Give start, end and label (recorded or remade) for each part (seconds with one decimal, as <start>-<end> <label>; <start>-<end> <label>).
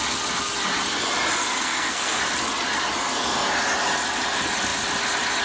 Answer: 0.0-1.4 recorded; 1.4-2.2 remade; 2.2-5.4 recorded